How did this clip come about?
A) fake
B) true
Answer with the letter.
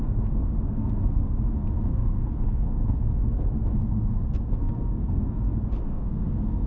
A